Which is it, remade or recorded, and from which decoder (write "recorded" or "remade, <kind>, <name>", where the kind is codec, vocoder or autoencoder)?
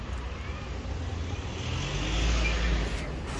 recorded